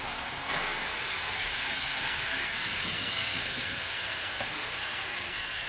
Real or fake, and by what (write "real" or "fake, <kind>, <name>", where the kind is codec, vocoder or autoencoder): fake, codec, SNAC